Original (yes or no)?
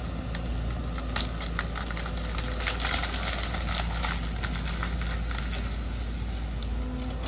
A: yes